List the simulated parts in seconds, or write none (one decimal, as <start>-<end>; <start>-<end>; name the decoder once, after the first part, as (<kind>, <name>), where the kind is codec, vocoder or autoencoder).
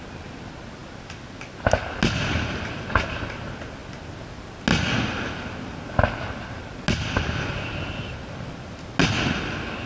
none